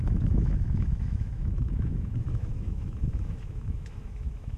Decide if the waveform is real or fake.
fake